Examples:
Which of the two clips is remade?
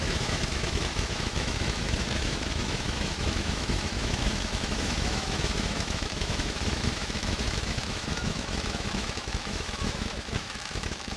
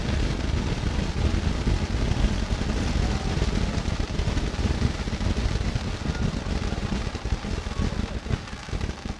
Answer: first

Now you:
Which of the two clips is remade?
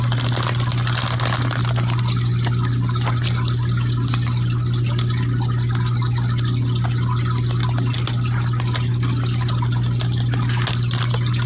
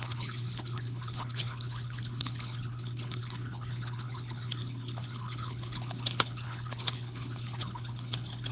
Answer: second